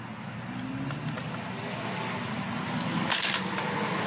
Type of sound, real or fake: real